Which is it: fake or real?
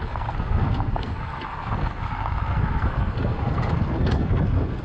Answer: fake